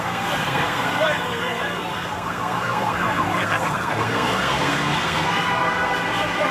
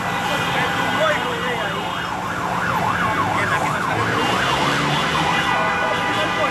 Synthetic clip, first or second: first